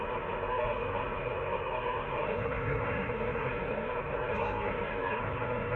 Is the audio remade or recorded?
remade